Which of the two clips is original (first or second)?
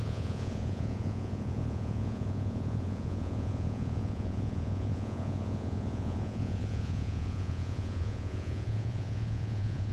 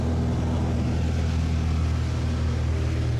second